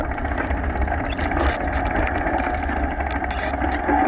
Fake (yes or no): no